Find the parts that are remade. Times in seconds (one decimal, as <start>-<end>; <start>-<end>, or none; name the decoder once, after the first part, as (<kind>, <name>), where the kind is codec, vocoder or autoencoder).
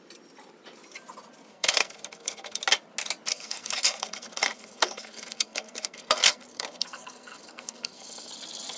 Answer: 1.5-2.6 (codec, SNAC); 3.3-8.3